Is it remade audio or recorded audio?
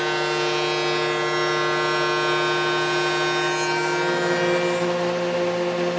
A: recorded